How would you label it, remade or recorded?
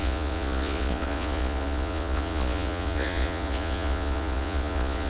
remade